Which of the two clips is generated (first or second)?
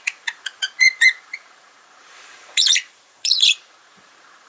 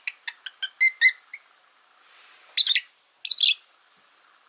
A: first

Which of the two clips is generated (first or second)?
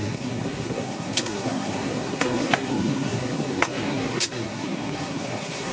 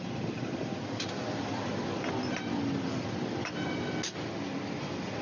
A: first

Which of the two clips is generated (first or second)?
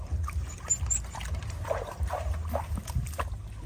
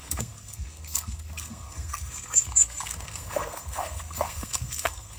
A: second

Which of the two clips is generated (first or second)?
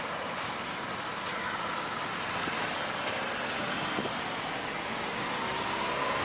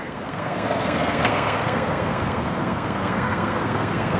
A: second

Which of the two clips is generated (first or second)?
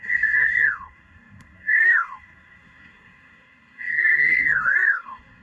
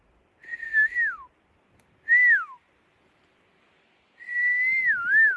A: first